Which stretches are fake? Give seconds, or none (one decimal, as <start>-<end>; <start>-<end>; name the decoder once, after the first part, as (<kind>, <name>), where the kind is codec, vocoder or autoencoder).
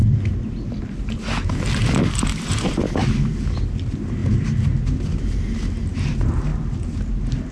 none